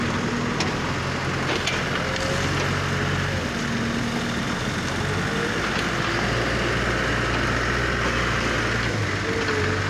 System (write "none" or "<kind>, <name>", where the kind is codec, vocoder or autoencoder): none